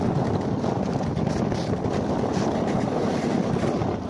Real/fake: real